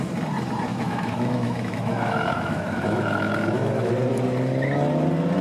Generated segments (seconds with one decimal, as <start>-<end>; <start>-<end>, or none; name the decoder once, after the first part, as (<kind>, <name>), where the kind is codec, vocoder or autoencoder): 0.7-3.9 (autoencoder, DAC-VAE)